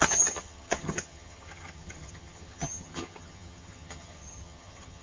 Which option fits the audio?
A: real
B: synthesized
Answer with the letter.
B